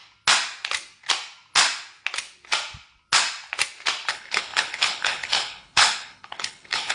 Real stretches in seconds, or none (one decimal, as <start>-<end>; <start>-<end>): 0.0-4.1